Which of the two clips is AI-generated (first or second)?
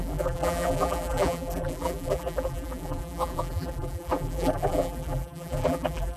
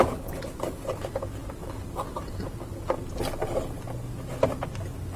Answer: first